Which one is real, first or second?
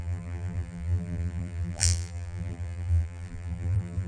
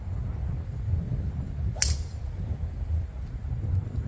second